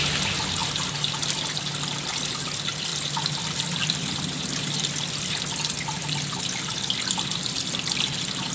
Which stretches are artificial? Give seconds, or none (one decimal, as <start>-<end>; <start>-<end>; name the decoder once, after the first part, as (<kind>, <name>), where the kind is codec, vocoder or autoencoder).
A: none